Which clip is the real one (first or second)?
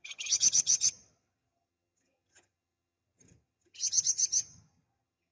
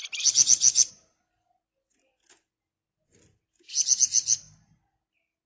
second